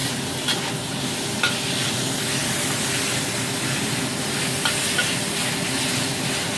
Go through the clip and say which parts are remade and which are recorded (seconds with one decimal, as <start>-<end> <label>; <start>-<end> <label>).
0.0-1.0 remade; 1.0-2.4 recorded; 2.4-4.4 remade; 4.4-6.6 recorded